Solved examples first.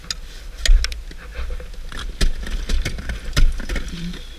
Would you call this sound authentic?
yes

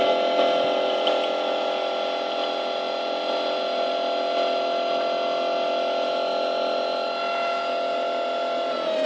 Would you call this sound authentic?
yes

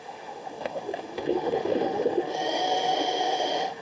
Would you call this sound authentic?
no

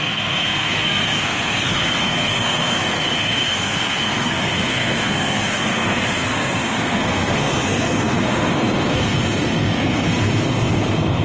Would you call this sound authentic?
no